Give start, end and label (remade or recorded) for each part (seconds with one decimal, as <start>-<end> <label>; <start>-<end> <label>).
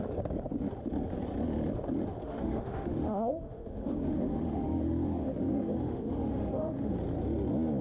0.0-2.2 recorded; 2.2-6.9 remade; 6.9-7.8 recorded